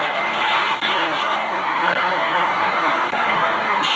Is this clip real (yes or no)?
no